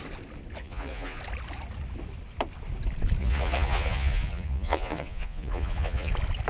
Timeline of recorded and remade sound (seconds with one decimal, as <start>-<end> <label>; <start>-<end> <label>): 0.0-0.6 recorded; 0.6-1.2 remade; 1.2-3.2 recorded; 3.2-6.1 remade; 6.1-6.5 recorded